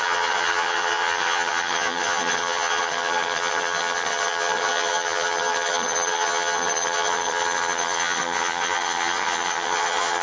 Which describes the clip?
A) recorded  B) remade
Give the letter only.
B